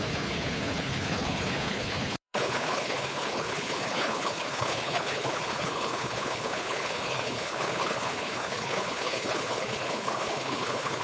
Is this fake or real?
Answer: fake